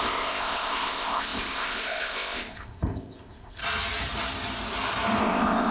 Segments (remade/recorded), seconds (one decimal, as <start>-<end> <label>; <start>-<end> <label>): 0.0-3.6 remade; 3.6-5.2 recorded; 5.2-5.7 remade